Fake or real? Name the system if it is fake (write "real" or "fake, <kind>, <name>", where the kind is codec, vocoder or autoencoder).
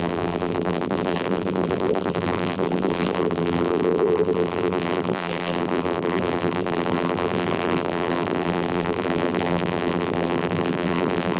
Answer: fake, vocoder, BigVGAN v2